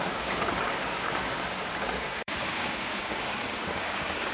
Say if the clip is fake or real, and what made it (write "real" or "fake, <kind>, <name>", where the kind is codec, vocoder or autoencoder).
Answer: fake, codec, DAC